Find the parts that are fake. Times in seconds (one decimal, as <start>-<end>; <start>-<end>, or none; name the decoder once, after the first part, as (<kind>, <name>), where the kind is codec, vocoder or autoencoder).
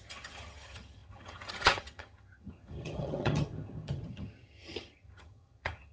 0.0-5.9 (vocoder, HiFi-GAN)